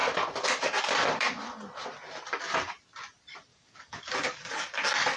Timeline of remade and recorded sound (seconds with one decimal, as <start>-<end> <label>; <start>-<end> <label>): 0.0-3.5 recorded; 3.5-4.6 remade; 4.6-5.2 recorded